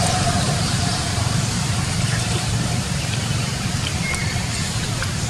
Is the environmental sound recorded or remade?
remade